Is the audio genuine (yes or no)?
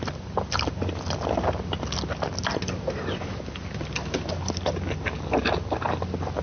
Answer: yes